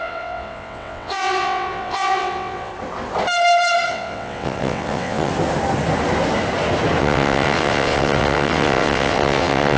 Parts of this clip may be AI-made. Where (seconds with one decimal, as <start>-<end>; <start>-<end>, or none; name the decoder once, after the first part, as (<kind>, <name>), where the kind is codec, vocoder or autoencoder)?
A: 0.0-2.7 (vocoder, WaveNeXt); 3.9-5.3; 7.0-9.8